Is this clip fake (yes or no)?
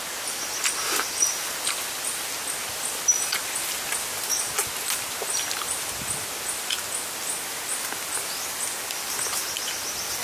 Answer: no